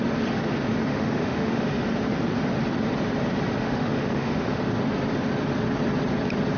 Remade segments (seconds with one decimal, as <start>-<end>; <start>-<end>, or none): 0.9-1.8; 3.6-4.6